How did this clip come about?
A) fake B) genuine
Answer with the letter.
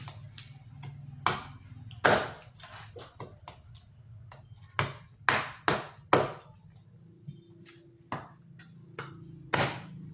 B